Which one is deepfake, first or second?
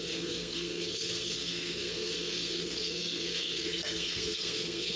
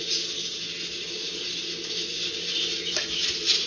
first